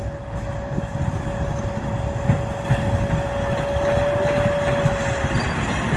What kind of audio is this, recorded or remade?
recorded